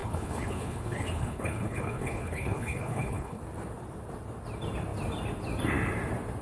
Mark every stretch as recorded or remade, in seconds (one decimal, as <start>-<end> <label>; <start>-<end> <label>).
0.0-3.4 remade; 3.4-6.4 recorded